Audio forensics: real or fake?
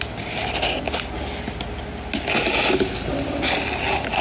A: real